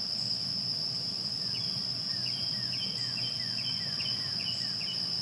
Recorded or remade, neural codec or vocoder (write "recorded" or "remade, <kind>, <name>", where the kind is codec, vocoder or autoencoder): remade, vocoder, Vocos